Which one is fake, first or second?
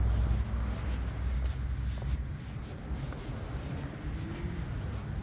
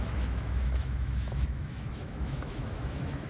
second